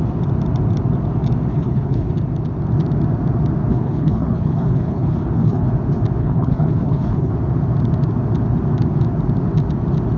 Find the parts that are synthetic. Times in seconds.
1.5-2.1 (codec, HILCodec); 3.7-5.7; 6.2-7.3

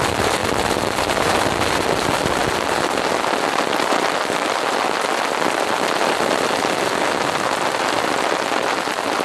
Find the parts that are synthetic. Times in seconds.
none

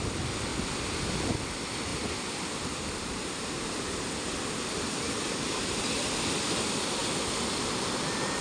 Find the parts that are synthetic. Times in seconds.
none

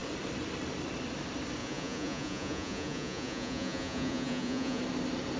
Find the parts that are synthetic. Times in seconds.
1.6-4.8 (vocoder, Vocos)

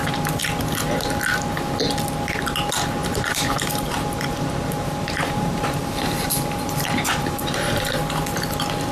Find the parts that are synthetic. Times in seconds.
3.0-7.9 (vocoder, BigVGAN v2)

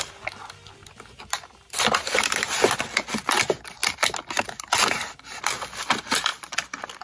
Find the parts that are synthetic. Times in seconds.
none

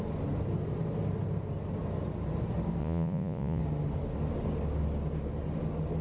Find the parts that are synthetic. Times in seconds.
2.8-3.6 (vocoder, Vocos)